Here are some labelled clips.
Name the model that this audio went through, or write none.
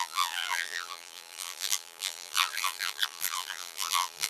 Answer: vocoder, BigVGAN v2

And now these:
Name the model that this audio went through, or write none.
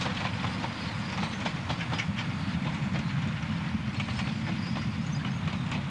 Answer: none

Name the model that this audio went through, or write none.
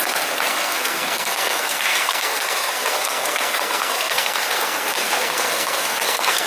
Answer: codec, SNAC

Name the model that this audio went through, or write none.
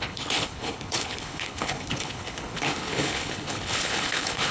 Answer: codec, HILCodec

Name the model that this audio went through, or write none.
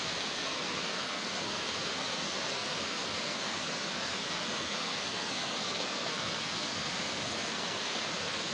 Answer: codec, SNAC